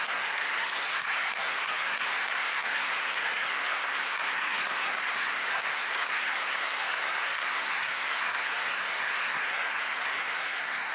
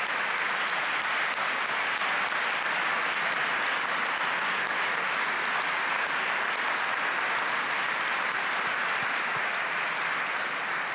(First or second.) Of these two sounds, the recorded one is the second